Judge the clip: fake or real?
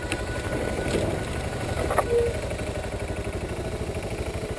real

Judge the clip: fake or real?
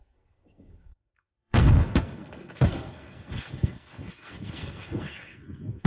fake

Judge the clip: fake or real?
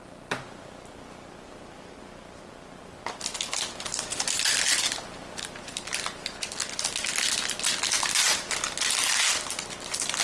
real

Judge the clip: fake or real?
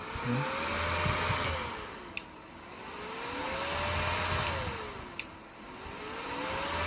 real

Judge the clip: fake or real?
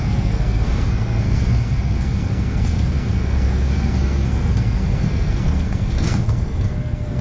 fake